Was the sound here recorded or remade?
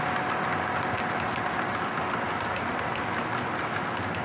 recorded